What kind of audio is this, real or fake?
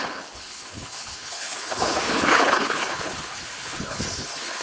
fake